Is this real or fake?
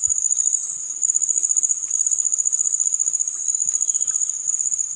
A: real